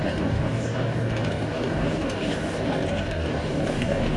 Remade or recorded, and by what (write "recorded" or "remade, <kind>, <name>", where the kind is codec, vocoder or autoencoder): remade, codec, DAC